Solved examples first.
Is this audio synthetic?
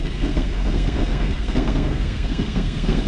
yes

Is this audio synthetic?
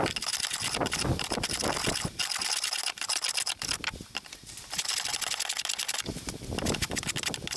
no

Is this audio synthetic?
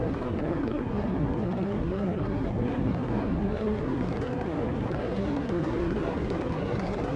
yes